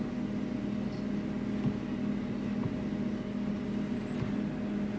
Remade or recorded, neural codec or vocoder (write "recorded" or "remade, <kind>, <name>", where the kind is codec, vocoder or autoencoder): recorded